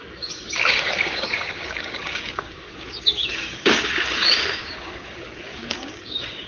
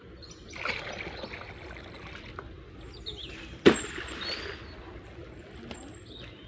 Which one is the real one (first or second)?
second